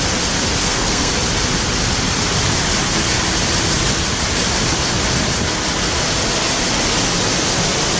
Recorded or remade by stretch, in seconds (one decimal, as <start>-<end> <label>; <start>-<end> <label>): 0.0-0.6 recorded; 0.6-1.1 remade; 1.1-8.0 recorded

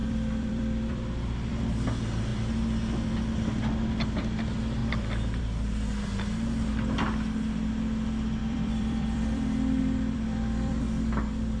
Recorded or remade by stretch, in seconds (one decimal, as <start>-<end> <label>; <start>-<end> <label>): 0.0-1.5 remade; 1.5-4.8 recorded; 4.8-5.4 remade; 5.4-8.4 recorded; 8.4-10.8 remade; 10.8-11.6 recorded

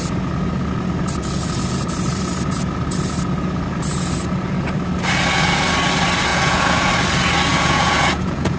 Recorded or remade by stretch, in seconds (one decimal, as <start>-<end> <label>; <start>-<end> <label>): 0.0-6.3 recorded; 6.3-6.9 remade; 6.9-7.5 recorded; 7.5-8.6 remade

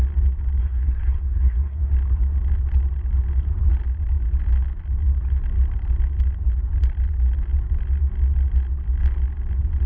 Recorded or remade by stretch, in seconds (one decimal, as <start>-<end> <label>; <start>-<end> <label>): 0.0-0.6 recorded; 0.6-1.9 remade; 1.9-9.9 recorded